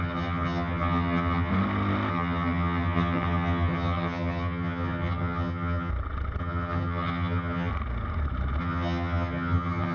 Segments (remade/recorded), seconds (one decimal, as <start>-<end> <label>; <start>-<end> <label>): 0.0-1.5 remade; 1.5-2.1 recorded; 2.1-5.9 remade; 5.9-6.4 recorded; 6.4-7.7 remade; 7.7-8.6 recorded; 8.6-9.9 remade